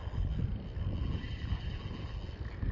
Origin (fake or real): real